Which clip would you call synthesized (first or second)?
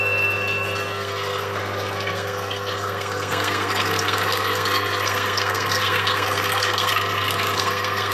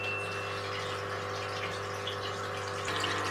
first